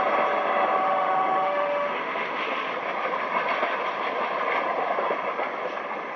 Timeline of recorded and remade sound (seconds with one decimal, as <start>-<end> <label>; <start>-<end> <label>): 0.0-0.8 recorded; 0.8-2.7 remade; 2.7-6.2 recorded